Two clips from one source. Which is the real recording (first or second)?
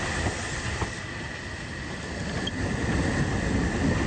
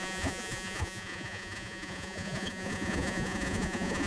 first